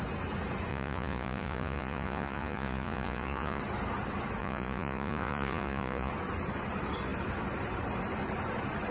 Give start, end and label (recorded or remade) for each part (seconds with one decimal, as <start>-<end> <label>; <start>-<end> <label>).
0.0-0.7 recorded; 0.7-3.6 remade; 3.6-4.4 recorded; 4.4-6.1 remade; 6.1-8.9 recorded